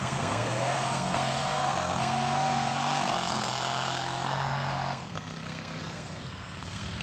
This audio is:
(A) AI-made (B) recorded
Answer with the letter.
A